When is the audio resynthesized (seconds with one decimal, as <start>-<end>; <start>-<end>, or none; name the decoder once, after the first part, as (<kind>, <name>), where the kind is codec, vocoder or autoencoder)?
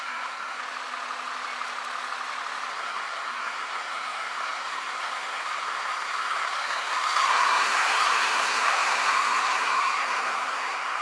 0.0-0.6 (codec, SNAC); 2.7-11.0